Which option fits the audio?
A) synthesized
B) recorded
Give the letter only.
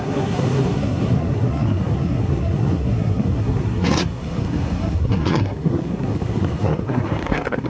A